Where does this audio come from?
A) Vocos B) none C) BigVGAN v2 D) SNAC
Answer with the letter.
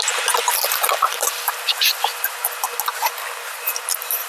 B